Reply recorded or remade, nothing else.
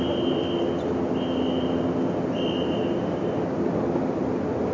recorded